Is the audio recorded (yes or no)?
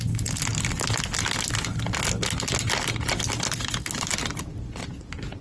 yes